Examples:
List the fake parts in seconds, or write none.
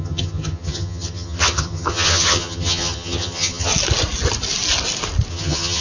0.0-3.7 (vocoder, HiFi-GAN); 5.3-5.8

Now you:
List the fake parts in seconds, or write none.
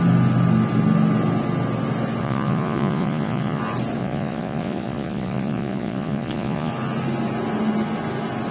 2.2-3.6 (vocoder, Vocos); 4.0-6.7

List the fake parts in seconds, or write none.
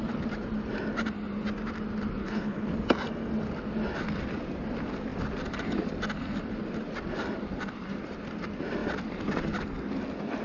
2.2-2.7 (codec, HILCodec)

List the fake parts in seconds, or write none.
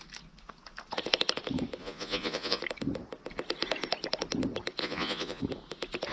1.8-2.6 (vocoder, Vocos); 4.8-5.4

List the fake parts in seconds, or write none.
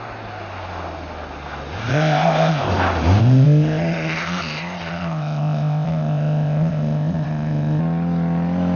1.9-2.7 (codec, ZipCodec); 3.2-7.8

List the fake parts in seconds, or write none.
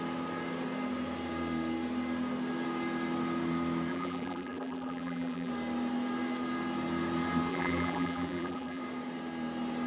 3.9-5.5 (vocoder, BigVGAN v2); 7.5-8.8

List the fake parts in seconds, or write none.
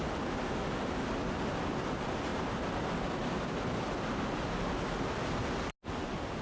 none